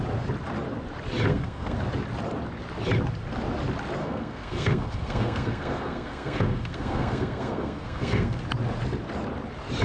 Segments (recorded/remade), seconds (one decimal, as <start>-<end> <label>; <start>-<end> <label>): 0.0-1.3 recorded; 1.3-1.8 remade; 1.8-4.0 recorded; 4.0-8.4 remade; 8.4-9.8 recorded